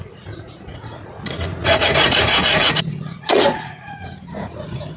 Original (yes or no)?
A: no